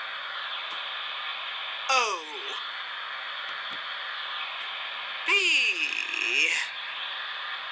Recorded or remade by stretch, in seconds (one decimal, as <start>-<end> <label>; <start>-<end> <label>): 0.0-7.7 recorded